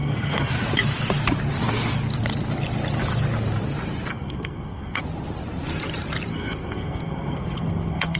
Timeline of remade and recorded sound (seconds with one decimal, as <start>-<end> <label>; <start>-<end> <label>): 0.0-0.5 remade; 0.5-4.1 recorded; 4.1-5.0 remade; 5.0-6.3 recorded; 6.3-8.2 remade